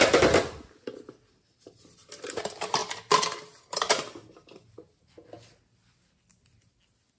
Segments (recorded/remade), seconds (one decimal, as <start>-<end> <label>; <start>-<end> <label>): 0.0-7.2 recorded